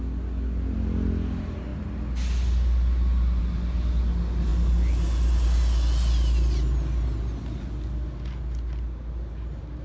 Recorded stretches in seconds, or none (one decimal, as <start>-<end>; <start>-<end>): 0.0-9.8